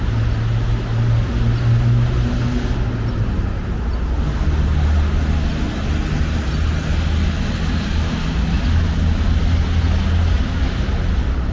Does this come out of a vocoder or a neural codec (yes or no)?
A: no